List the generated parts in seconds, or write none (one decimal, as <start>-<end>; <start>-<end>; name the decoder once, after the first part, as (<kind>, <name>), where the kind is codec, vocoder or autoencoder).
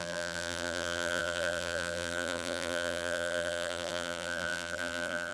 0.0-5.3 (vocoder, BigVGAN v2)